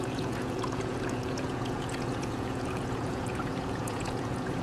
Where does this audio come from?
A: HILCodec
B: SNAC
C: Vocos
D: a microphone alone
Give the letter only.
C